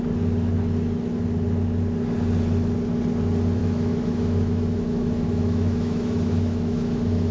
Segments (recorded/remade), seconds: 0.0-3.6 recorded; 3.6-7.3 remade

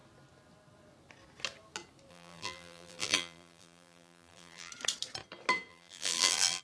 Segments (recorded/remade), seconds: 0.0-2.1 recorded; 2.1-4.7 remade; 4.7-5.7 recorded; 5.7-6.6 remade

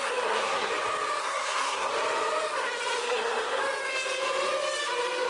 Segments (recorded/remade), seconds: 0.0-0.7 remade; 0.7-1.2 recorded; 1.2-1.9 remade; 1.9-3.0 recorded; 3.0-3.6 remade; 3.6-5.3 recorded

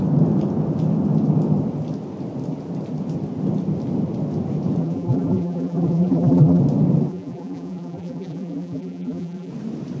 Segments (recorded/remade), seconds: 0.0-4.8 recorded; 4.8-6.6 remade; 6.6-7.1 recorded; 7.1-9.5 remade; 9.5-10.0 recorded

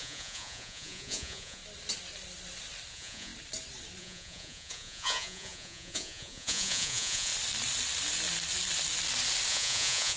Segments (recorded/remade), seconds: 0.0-1.6 remade; 1.6-2.9 recorded; 2.9-3.3 remade; 3.3-4.0 recorded; 4.0-7.3 remade; 7.3-9.5 recorded; 9.5-10.2 remade